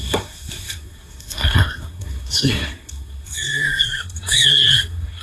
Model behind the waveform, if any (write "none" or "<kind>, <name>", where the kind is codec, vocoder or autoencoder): codec, SNAC